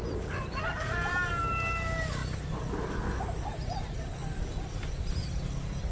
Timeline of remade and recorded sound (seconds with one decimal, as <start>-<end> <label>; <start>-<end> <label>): 0.0-5.9 recorded